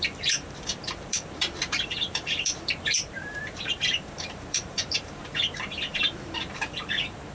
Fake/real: fake